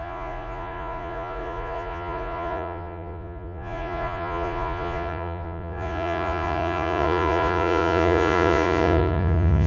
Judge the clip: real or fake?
fake